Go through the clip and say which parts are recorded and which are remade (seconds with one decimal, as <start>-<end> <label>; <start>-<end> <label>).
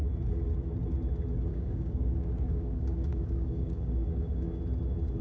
0.0-1.5 recorded; 1.5-4.6 remade; 4.6-5.2 recorded